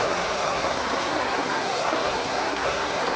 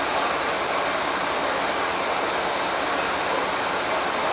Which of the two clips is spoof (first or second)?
first